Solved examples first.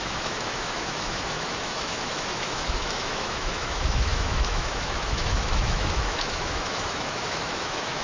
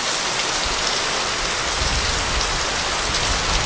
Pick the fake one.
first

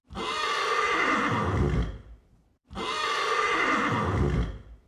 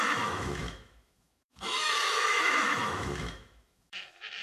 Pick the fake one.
second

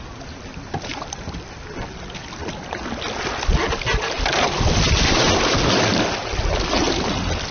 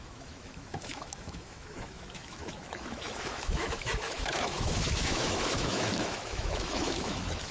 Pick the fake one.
second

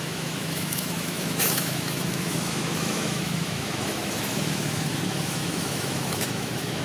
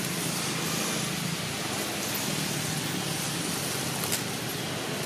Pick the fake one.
first